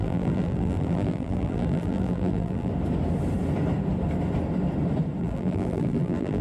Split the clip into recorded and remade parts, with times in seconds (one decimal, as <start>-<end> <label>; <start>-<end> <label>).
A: 0.0-2.7 remade; 2.7-5.2 recorded; 5.2-6.4 remade